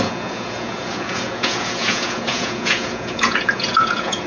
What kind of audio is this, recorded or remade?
remade